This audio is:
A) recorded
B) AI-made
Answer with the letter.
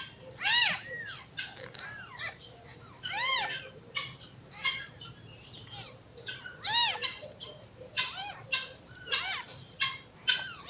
B